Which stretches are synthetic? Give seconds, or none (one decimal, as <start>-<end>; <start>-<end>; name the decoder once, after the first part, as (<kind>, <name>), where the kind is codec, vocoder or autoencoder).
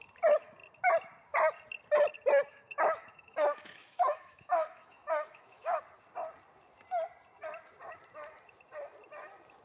2.5-5.8 (autoencoder, DAC-VAE)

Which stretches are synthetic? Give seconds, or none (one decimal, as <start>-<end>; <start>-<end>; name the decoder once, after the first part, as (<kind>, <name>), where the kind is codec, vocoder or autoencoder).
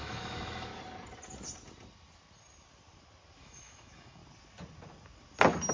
0.0-0.7 (autoencoder, DAC-VAE); 3.4-4.2